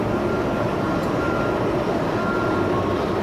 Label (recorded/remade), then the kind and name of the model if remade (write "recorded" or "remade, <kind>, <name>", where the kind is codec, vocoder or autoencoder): recorded